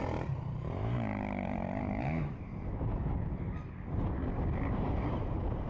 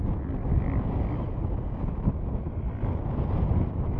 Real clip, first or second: second